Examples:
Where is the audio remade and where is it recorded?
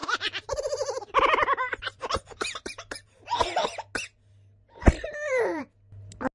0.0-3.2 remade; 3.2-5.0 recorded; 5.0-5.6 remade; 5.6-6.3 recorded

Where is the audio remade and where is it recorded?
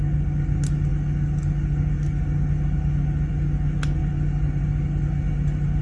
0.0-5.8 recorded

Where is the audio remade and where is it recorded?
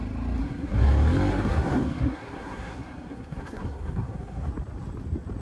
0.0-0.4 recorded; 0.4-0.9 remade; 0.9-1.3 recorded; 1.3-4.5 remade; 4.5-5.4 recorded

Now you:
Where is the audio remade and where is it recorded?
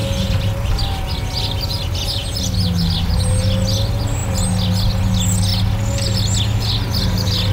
0.0-7.5 recorded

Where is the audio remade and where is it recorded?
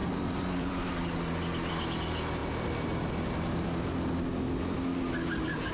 0.0-1.0 remade; 1.0-5.7 recorded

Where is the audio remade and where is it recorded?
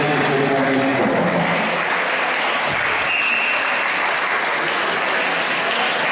0.0-6.1 recorded